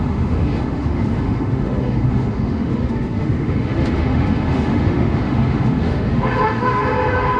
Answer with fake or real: fake